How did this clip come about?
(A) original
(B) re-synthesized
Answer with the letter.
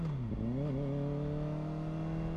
A